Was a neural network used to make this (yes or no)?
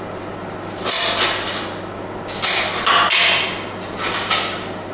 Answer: no